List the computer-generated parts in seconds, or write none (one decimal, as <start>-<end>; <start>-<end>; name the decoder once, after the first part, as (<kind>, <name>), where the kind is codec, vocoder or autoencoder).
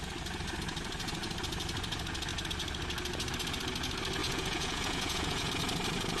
4.2-5.5 (vocoder, Vocos)